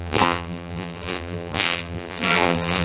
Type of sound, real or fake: fake